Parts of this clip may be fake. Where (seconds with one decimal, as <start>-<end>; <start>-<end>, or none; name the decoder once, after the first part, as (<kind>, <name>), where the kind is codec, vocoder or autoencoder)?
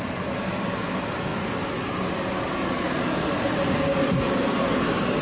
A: none